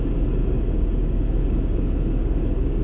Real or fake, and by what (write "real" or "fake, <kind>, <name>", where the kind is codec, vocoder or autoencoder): fake, codec, DAC